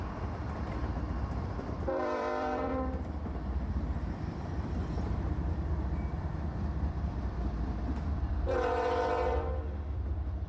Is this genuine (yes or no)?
no